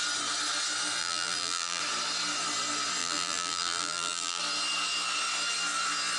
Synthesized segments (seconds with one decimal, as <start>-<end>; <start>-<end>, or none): 1.0-1.8; 3.0-4.4